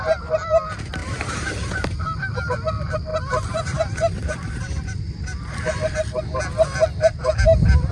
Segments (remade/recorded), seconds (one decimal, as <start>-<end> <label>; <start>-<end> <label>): 0.0-1.0 recorded; 1.0-2.2 remade; 2.2-3.1 recorded; 3.1-5.4 remade; 5.4-7.9 recorded